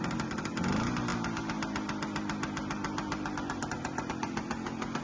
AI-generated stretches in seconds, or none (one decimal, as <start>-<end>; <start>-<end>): none